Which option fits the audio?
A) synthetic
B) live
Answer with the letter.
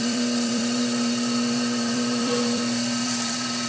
A